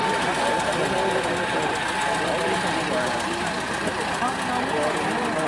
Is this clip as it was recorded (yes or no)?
yes